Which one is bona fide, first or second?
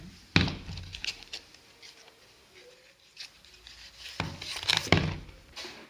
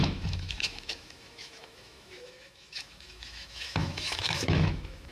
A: first